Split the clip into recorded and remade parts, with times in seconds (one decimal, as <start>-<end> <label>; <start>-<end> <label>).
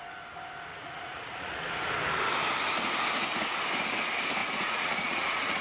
0.0-0.7 recorded; 0.7-1.6 remade; 1.6-4.4 recorded; 4.4-5.6 remade